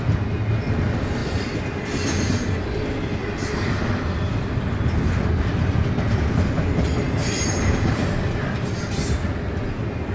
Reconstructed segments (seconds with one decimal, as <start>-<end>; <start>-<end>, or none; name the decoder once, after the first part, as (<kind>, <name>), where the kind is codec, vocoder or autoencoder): 3.2-3.9 (vocoder, BigVGAN v2); 7.2-8.7